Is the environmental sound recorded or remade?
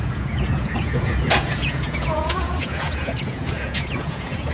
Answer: remade